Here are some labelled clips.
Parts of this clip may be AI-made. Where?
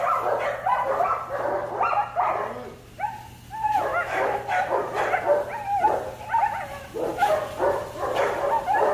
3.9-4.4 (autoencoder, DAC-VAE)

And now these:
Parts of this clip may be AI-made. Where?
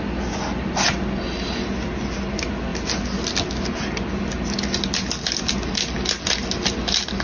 none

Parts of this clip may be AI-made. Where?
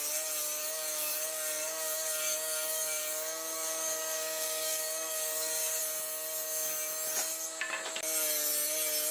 0.6-5.8 (codec, DAC)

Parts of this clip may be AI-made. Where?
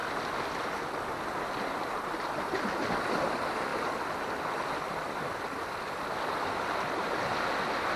none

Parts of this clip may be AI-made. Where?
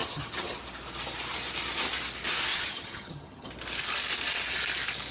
0.0-0.6 (vocoder, HiFi-GAN); 2.5-3.5